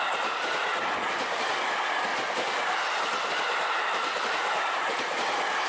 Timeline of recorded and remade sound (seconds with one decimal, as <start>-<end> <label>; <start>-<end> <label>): 0.0-5.7 recorded